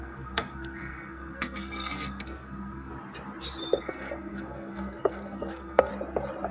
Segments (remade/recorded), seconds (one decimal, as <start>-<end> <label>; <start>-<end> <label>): 0.0-2.9 remade; 2.9-3.8 recorded; 3.8-5.9 remade; 5.9-6.5 recorded